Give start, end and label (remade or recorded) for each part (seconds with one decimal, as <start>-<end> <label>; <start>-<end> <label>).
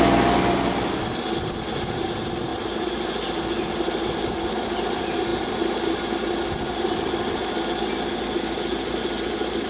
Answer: 0.0-9.7 recorded